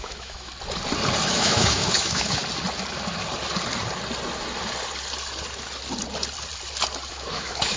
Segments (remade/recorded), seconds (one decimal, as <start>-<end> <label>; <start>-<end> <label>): 0.0-0.5 remade; 0.5-1.3 recorded; 1.3-2.4 remade; 2.4-7.1 recorded; 7.1-7.8 remade